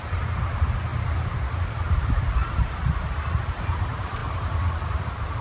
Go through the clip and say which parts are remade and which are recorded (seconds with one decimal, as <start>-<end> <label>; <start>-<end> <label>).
0.0-0.9 recorded; 0.9-3.3 remade; 3.3-5.4 recorded